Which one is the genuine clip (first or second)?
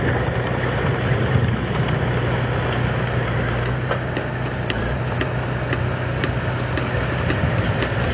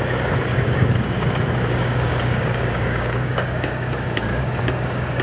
first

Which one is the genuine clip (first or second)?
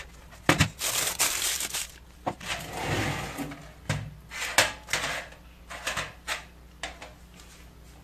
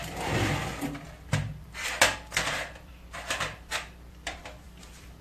first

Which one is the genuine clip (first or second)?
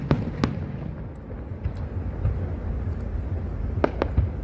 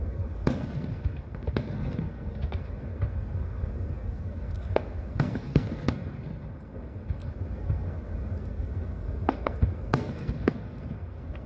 first